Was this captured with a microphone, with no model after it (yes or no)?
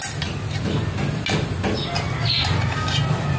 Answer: yes